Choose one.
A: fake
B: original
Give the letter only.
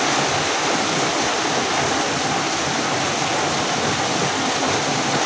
B